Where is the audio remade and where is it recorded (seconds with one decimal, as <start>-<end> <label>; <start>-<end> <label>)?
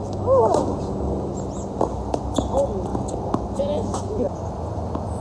0.0-5.2 recorded